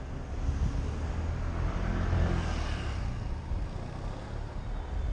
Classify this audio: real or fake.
real